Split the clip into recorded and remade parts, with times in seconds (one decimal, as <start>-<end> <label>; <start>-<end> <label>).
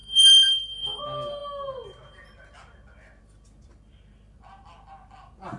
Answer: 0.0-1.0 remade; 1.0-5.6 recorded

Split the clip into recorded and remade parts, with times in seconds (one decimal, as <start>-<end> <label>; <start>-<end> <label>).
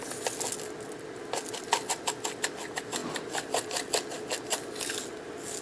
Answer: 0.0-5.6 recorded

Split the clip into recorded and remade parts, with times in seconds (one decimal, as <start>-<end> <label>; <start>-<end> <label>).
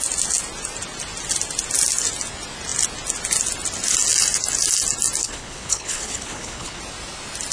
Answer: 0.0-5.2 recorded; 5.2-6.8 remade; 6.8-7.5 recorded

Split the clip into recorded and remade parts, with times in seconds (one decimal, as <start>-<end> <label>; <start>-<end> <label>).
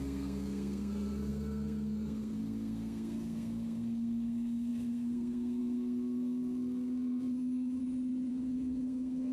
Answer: 0.0-7.8 remade; 7.8-8.3 recorded; 8.3-9.3 remade